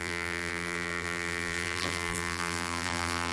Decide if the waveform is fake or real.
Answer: fake